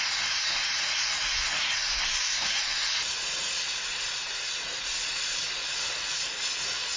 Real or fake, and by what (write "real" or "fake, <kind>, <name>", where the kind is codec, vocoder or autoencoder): fake, vocoder, Vocos